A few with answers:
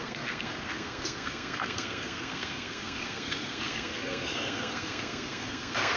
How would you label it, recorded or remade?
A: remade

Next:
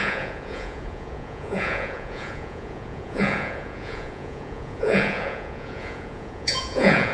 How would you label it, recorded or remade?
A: remade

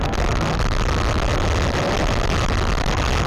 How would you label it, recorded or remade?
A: recorded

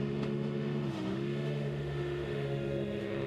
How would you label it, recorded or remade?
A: remade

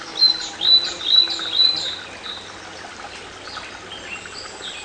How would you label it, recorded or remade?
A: recorded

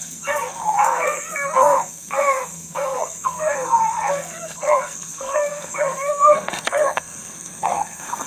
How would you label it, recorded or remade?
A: remade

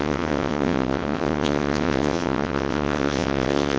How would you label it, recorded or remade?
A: remade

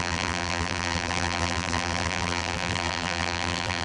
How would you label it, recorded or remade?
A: remade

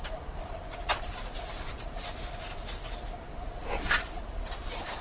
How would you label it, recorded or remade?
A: recorded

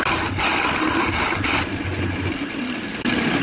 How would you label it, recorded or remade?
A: recorded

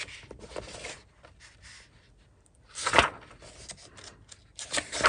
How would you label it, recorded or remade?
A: recorded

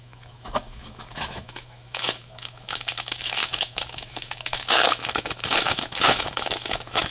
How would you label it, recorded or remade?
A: remade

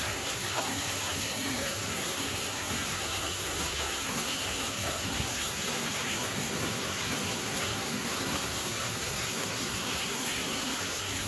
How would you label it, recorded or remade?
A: remade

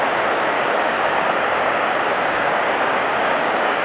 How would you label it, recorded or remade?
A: remade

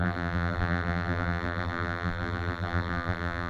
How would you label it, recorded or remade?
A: remade